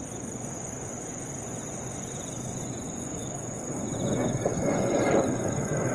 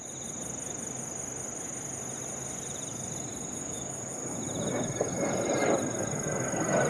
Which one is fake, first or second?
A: first